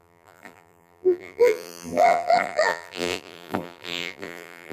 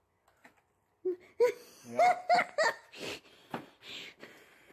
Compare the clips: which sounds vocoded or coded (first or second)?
first